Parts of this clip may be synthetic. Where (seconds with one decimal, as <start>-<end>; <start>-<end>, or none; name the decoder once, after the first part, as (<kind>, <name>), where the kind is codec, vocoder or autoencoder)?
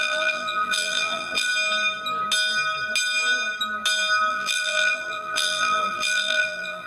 0.0-1.5 (vocoder, BigVGAN v2); 4.3-6.9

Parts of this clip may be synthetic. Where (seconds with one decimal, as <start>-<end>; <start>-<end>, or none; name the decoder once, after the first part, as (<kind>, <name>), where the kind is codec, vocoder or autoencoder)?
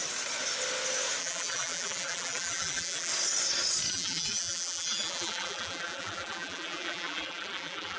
1.2-3.1 (vocoder, BigVGAN v2); 3.9-8.0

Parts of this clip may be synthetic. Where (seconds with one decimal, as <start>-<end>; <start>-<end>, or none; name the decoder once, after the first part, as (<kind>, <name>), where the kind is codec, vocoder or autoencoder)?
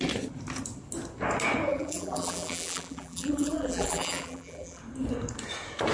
1.7-4.8 (vocoder, BigVGAN v2)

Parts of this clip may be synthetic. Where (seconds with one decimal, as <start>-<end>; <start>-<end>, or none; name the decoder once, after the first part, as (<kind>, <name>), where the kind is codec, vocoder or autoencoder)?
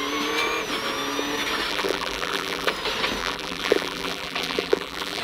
1.7-2.7 (vocoder, BigVGAN v2); 3.2-5.2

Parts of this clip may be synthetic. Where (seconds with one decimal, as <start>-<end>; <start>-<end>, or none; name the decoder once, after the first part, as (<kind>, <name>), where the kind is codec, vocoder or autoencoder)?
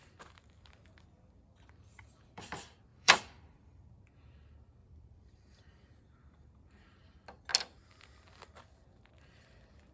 1.9-2.5 (vocoder, BigVGAN v2); 2.9-3.8; 4.8-6.0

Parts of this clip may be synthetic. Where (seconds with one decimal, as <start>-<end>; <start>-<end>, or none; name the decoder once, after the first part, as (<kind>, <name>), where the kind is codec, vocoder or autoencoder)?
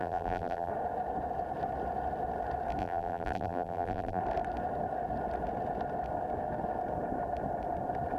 0.0-0.7 (vocoder, BigVGAN v2); 2.8-4.2